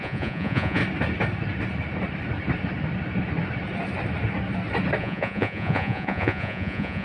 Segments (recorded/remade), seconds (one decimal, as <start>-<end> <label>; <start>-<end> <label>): 0.0-0.8 remade; 0.8-5.0 recorded; 5.0-7.0 remade